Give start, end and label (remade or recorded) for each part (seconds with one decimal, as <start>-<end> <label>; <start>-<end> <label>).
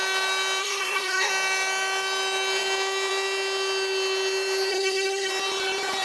0.0-0.6 recorded; 0.6-1.3 remade; 1.3-4.7 recorded; 4.7-5.3 remade; 5.3-6.0 recorded